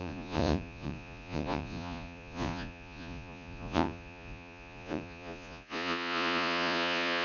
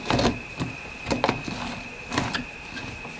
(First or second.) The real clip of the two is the second